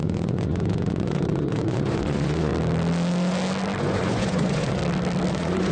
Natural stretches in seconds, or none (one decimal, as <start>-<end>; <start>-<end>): 2.5-3.8; 4.8-5.3